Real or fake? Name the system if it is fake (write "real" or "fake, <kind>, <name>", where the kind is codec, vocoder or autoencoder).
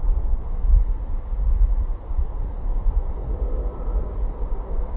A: real